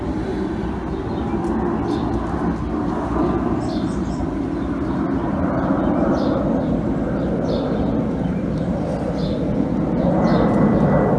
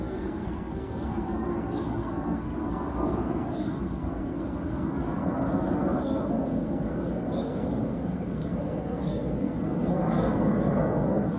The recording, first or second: first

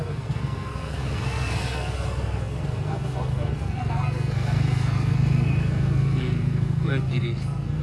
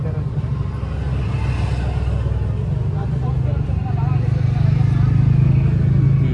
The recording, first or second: second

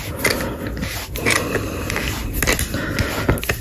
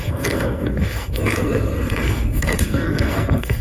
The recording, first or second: first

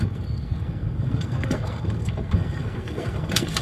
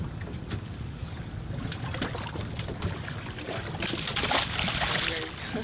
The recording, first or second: second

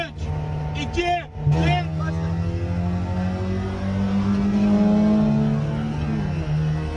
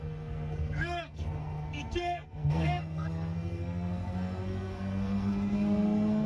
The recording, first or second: first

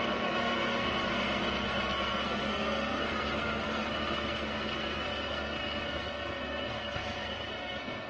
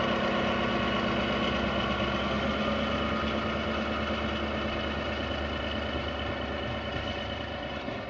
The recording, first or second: second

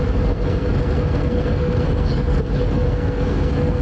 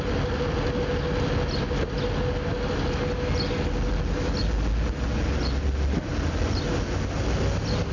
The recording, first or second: second